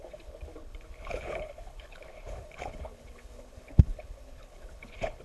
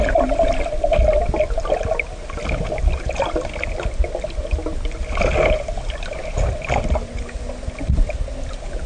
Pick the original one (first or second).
second